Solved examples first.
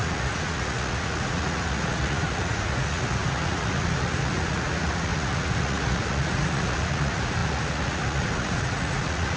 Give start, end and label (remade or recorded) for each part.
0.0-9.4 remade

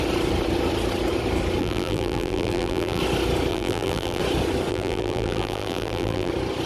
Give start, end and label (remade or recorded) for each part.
0.0-1.6 recorded; 1.6-3.0 remade; 3.0-3.5 recorded; 3.5-4.2 remade; 4.2-4.7 recorded; 4.7-6.3 remade; 6.3-6.7 recorded

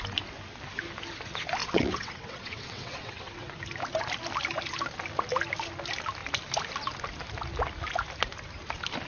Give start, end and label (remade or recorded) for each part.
0.0-1.6 recorded; 1.6-3.5 remade; 3.5-9.1 recorded